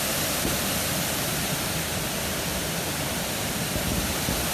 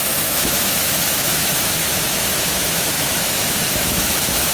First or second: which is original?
first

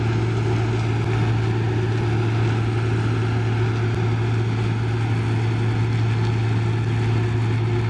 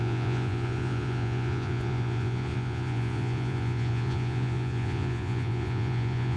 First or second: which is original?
first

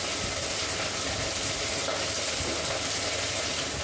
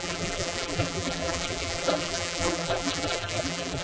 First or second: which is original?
first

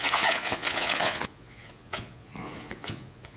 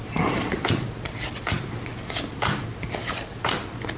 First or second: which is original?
second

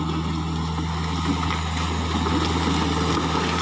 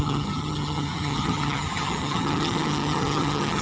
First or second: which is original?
first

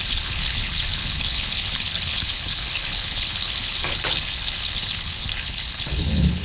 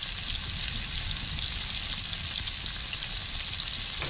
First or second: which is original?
second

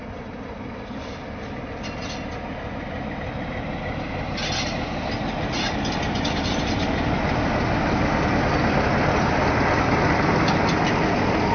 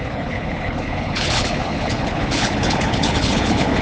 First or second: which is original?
first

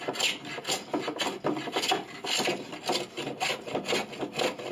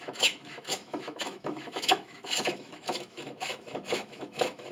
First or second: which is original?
first